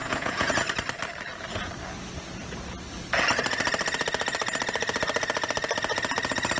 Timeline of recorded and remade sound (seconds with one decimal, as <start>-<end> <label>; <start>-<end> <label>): 0.0-0.6 remade; 0.6-6.6 recorded